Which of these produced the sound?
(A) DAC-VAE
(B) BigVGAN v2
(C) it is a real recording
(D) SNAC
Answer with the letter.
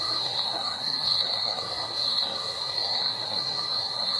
D